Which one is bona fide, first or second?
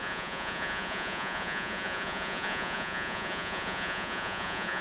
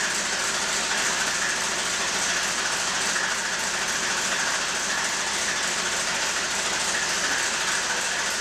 second